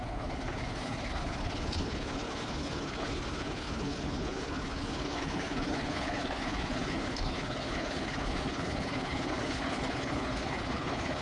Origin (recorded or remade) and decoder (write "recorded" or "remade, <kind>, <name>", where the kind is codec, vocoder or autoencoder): remade, codec, HILCodec